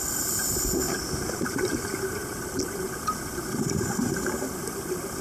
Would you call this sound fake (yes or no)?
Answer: no